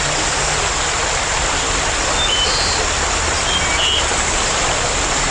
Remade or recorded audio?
recorded